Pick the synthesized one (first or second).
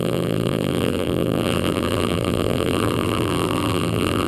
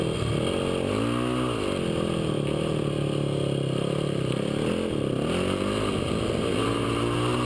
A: first